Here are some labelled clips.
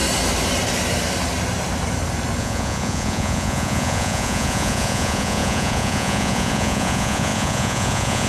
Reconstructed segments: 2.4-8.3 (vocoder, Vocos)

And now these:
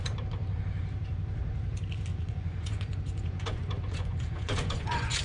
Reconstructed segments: 2.1-5.2 (vocoder, Vocos)

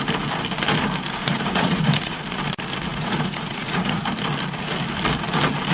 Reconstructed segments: 1.3-2.2 (vocoder, Vocos); 2.9-4.0

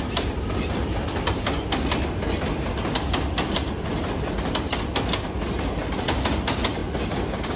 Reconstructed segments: none

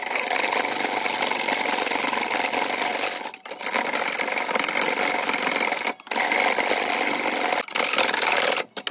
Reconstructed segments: none